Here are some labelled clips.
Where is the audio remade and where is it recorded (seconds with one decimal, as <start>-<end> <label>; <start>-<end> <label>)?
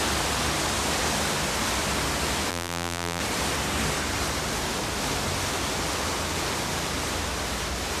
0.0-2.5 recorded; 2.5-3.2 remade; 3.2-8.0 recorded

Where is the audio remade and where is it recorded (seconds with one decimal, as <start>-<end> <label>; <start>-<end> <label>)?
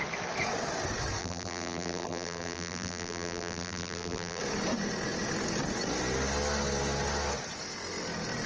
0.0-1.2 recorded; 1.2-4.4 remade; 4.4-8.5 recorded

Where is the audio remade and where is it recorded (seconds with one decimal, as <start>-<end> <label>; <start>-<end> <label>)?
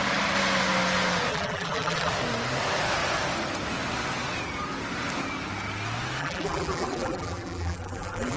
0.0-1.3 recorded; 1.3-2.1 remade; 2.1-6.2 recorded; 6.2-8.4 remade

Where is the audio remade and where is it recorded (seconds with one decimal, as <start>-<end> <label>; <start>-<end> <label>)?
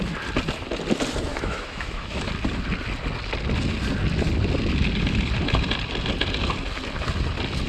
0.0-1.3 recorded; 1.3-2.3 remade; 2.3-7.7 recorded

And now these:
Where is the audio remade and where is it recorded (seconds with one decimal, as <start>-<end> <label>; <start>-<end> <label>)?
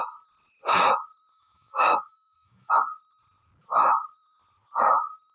0.0-1.3 recorded; 1.3-2.7 remade; 2.7-5.3 recorded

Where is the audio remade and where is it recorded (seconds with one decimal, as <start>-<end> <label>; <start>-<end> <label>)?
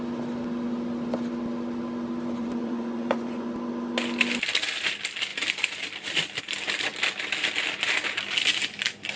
0.0-2.4 recorded; 2.4-3.5 remade; 3.5-9.2 recorded